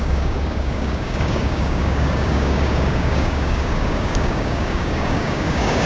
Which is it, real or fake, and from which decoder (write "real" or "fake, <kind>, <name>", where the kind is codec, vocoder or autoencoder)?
fake, codec, DAC